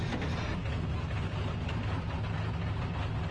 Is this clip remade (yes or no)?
no